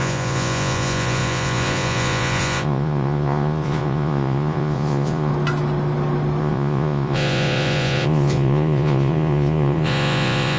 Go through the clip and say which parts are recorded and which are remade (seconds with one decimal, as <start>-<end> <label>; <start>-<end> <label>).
0.0-5.3 remade; 5.3-6.4 recorded; 6.4-10.6 remade